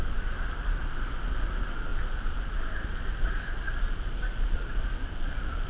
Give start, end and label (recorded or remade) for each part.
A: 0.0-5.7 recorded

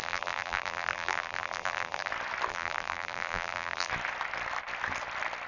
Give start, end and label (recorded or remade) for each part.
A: 0.0-2.1 remade; 2.1-2.5 recorded; 2.5-3.9 remade; 3.9-5.5 recorded